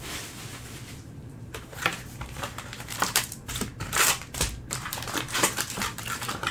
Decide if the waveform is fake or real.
fake